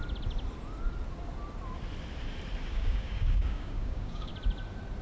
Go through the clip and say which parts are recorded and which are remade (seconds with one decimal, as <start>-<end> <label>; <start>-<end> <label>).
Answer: 0.0-2.7 recorded; 2.7-4.3 remade; 4.3-5.0 recorded